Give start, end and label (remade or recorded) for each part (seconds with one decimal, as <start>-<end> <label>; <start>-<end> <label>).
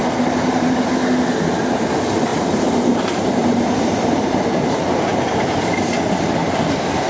0.0-0.9 remade; 0.9-2.3 recorded; 2.3-6.0 remade; 6.0-7.1 recorded